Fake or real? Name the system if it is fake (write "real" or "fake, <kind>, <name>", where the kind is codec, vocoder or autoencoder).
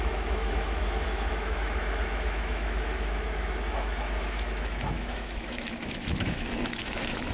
fake, autoencoder, DAC-VAE